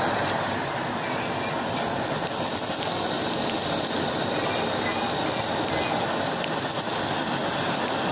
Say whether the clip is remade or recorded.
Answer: recorded